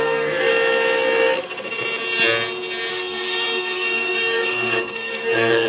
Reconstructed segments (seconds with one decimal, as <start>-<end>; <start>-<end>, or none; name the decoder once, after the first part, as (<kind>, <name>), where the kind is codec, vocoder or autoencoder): 0.0-0.5 (codec, SNAC); 2.9-5.7